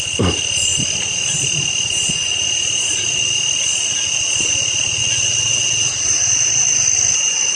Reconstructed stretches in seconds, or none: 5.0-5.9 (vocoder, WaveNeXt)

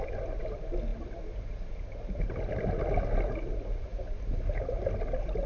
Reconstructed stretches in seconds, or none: none

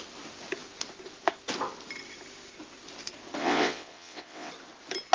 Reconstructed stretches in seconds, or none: 3.4-4.5 (vocoder, WaveNeXt)

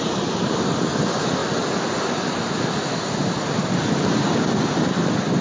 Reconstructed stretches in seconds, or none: none

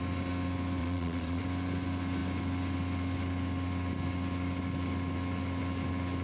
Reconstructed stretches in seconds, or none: 0.8-1.4 (vocoder, WaveNeXt)